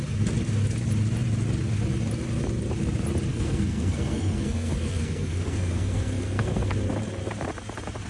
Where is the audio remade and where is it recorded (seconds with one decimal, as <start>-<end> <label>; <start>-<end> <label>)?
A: 0.0-3.3 recorded; 3.3-6.7 remade; 6.7-8.1 recorded